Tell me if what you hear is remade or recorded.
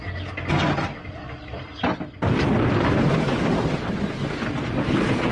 recorded